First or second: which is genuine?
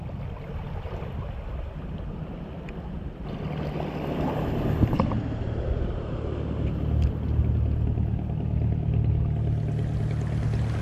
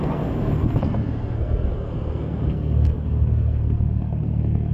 first